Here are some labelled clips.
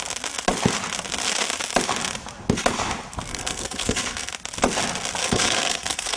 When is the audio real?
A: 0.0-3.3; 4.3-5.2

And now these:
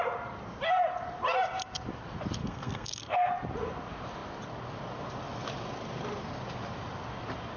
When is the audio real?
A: 0.0-2.4; 3.3-7.6

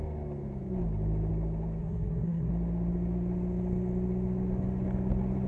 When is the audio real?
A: 0.0-1.8; 2.5-5.5

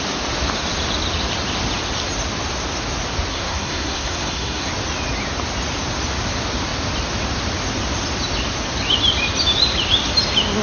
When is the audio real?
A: 0.0-3.3; 4.7-10.6

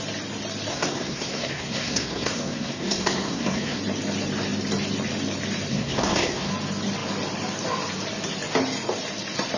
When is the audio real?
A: 0.0-0.7; 3.8-5.7; 6.5-9.6